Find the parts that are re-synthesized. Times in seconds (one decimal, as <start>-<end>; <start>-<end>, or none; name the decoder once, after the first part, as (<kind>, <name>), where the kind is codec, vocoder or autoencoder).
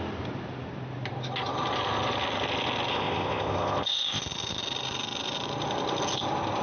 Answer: 2.9-4.2 (codec, ZipCodec)